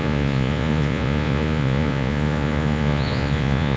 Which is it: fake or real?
fake